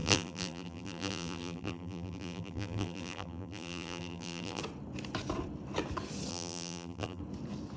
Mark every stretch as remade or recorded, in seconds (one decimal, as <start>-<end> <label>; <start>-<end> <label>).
0.0-4.6 remade; 4.6-6.3 recorded; 6.3-7.2 remade; 7.2-7.8 recorded